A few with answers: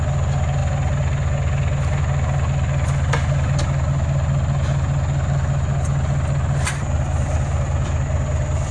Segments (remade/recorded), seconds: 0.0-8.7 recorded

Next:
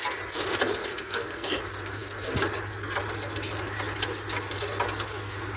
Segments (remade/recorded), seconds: 0.0-0.8 recorded; 0.8-1.6 remade; 1.6-5.6 recorded

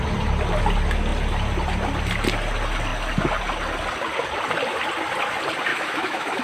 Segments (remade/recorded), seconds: 0.0-5.7 recorded; 5.7-6.4 remade